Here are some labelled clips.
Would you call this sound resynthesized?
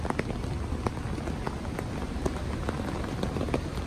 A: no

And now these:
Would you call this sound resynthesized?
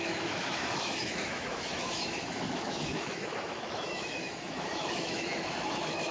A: yes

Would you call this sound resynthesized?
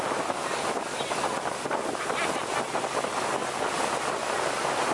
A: no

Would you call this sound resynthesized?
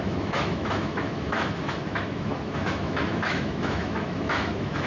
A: yes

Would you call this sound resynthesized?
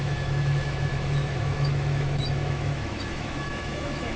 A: yes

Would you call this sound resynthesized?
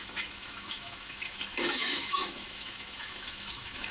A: yes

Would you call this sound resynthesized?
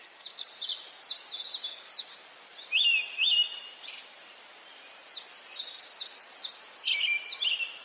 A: no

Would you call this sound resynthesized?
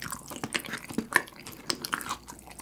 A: no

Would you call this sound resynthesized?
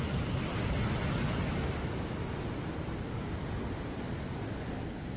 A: no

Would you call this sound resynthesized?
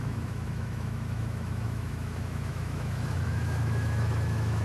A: yes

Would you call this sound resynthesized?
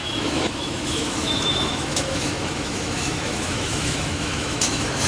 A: yes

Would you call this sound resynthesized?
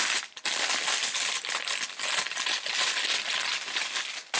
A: no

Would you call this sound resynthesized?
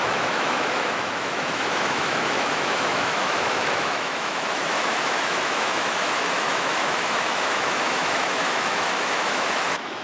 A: yes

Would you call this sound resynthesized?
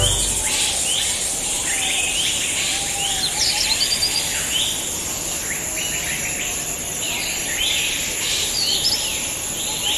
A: no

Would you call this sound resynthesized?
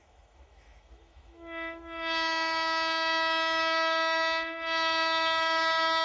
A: yes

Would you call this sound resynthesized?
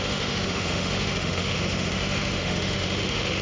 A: yes